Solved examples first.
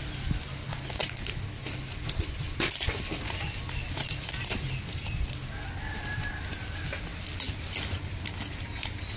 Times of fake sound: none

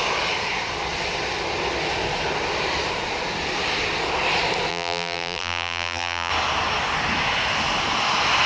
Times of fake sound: 4.7-6.3 (vocoder, BigVGAN v2)

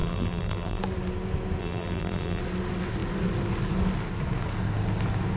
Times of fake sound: 0.0-0.8 (vocoder, BigVGAN v2); 1.6-2.4

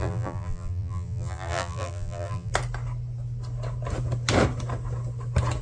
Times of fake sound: 0.0-2.5 (vocoder, BigVGAN v2)

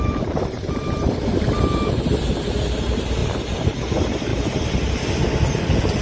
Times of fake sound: 0.0-6.0 (vocoder, BigVGAN v2)